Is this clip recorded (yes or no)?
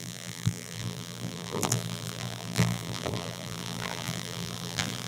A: no